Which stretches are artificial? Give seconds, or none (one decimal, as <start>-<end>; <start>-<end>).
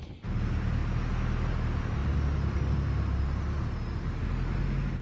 none